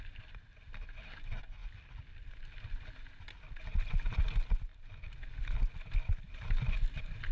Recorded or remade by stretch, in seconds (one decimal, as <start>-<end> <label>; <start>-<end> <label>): 0.0-7.3 recorded

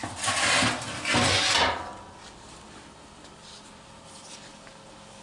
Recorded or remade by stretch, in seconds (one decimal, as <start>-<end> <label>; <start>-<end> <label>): 0.0-5.2 recorded

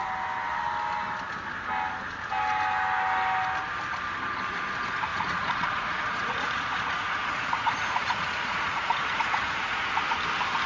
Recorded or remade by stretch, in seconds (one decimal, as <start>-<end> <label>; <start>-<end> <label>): 0.0-5.1 recorded; 5.1-9.9 remade; 9.9-10.7 recorded